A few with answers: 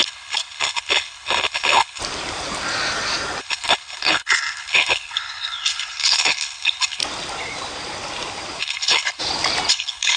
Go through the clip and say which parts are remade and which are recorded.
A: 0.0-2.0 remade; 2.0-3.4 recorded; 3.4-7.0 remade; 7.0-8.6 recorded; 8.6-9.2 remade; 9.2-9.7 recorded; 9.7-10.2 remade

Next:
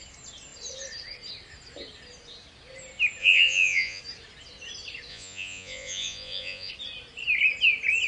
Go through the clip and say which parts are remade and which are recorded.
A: 0.0-3.2 recorded; 3.2-4.0 remade; 4.0-5.1 recorded; 5.1-6.7 remade; 6.7-8.1 recorded

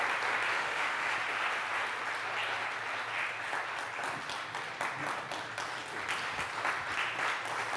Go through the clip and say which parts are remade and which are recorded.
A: 0.0-0.5 recorded; 0.5-1.1 remade; 1.1-7.8 recorded

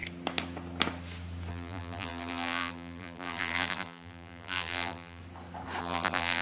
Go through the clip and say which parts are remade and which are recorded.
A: 0.0-1.5 recorded; 1.5-5.2 remade; 5.2-5.8 recorded; 5.8-6.4 remade

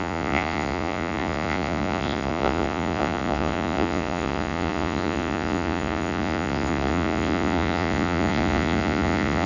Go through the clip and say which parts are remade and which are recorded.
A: 0.0-9.5 remade

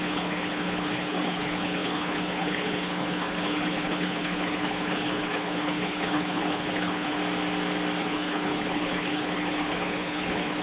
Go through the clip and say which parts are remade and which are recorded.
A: 0.0-7.2 remade; 7.2-8.0 recorded; 8.0-10.6 remade

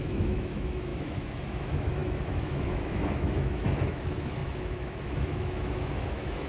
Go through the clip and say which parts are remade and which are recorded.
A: 0.0-6.5 remade